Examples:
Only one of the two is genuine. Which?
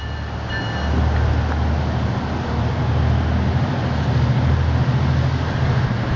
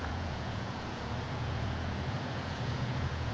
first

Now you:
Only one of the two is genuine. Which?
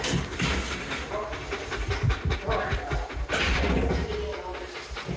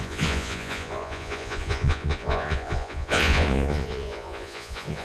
first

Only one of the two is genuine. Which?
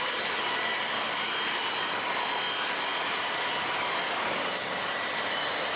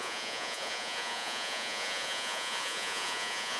first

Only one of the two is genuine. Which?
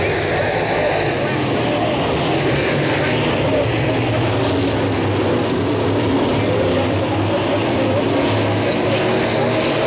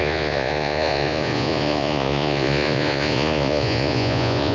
first